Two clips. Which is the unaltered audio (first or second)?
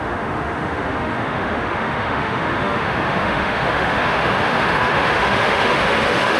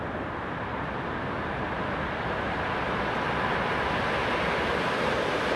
second